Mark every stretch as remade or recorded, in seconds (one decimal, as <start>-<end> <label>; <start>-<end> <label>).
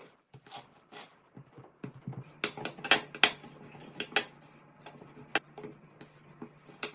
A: 0.0-1.5 remade; 1.5-3.8 recorded; 3.8-4.5 remade; 4.5-6.9 recorded